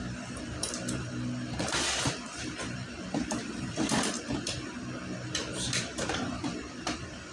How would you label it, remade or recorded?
remade